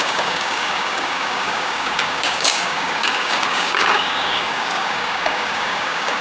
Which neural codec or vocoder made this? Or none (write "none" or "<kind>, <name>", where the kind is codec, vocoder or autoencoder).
codec, DAC